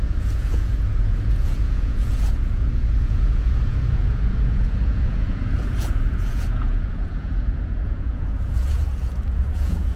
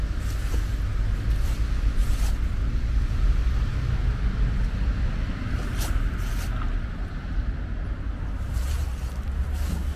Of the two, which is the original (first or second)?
second